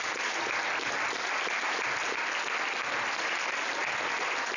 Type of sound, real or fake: fake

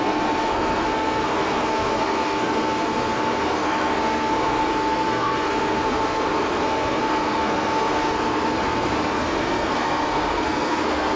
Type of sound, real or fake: fake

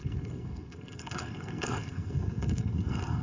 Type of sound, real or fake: fake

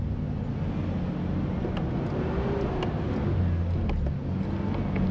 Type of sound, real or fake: real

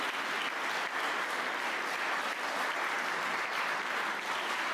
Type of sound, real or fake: real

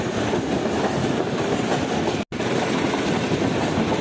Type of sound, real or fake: real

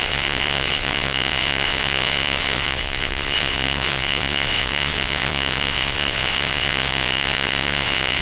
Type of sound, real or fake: fake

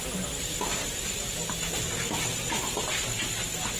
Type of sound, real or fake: real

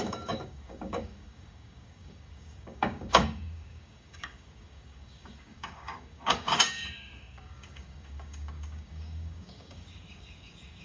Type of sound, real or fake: fake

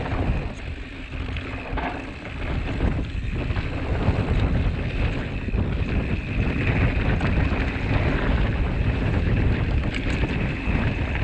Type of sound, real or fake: real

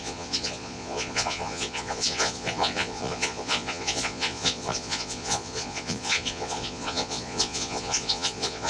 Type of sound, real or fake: fake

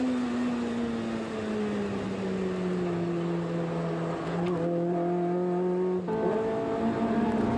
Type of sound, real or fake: real